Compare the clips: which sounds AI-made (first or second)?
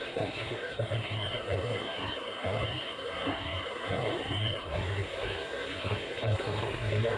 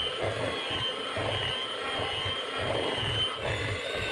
first